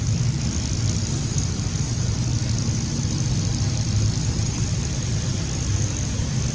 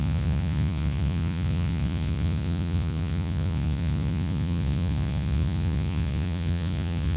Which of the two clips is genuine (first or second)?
first